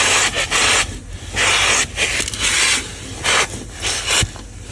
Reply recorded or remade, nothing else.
recorded